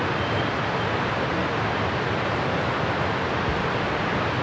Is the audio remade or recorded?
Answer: recorded